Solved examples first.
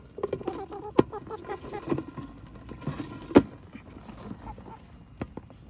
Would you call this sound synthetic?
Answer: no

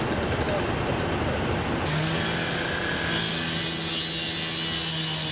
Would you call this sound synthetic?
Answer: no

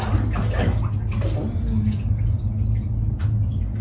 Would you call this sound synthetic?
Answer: no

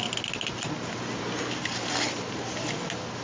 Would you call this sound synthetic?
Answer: no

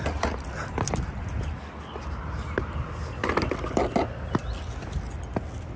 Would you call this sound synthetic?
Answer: no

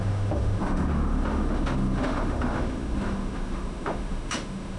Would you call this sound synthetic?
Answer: yes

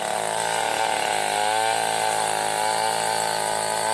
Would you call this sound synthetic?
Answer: no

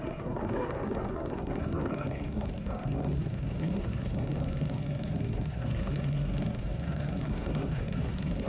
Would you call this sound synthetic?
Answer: yes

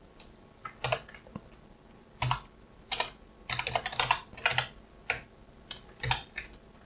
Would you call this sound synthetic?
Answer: no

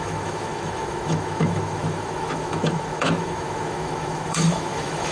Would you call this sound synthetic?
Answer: yes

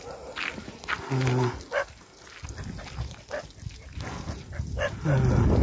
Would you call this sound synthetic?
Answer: no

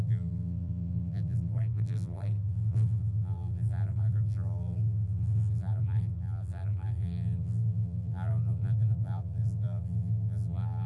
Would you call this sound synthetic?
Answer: yes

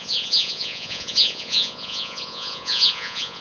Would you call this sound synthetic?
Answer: yes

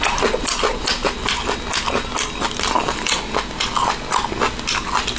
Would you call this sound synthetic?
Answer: no